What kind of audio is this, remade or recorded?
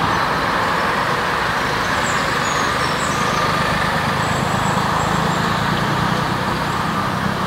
recorded